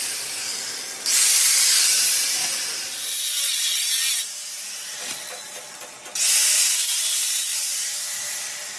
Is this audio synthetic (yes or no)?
no